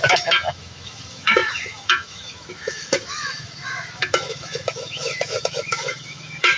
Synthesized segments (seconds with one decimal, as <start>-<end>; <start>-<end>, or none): 0.0-6.6